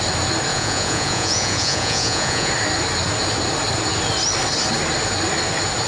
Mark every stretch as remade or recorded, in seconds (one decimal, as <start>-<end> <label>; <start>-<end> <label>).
0.0-0.5 recorded; 0.5-2.5 remade; 2.5-5.9 recorded

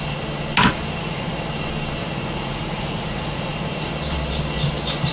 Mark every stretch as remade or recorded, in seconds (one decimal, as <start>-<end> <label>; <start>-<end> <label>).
0.0-1.0 recorded; 1.0-1.5 remade; 1.5-2.0 recorded; 2.0-3.9 remade; 3.9-5.1 recorded